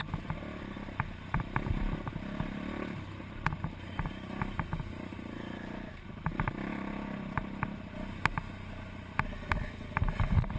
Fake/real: real